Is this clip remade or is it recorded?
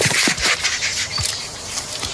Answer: remade